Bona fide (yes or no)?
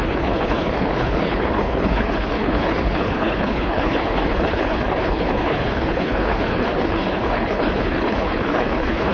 no